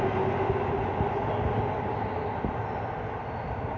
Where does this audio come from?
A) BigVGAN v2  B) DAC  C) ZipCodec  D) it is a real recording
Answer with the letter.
D